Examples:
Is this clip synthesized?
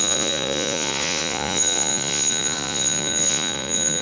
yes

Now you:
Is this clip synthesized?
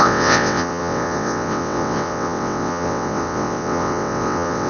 yes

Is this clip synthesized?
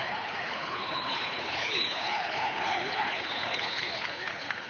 yes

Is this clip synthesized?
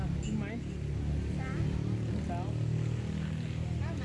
no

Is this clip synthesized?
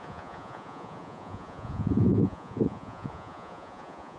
yes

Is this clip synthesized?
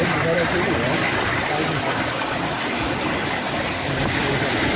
no